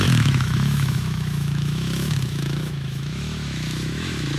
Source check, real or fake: fake